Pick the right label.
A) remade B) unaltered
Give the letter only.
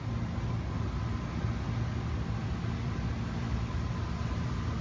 B